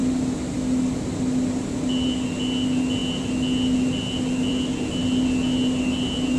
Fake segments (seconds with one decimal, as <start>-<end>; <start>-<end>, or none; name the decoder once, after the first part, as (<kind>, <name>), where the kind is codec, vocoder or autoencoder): none